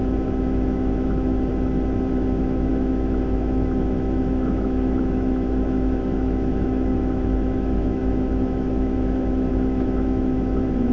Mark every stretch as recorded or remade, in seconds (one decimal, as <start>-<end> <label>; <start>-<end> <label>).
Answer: 0.0-1.5 remade; 1.5-2.1 recorded; 2.1-10.9 remade